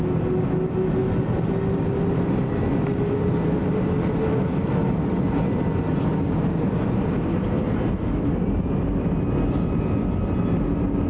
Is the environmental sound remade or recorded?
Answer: recorded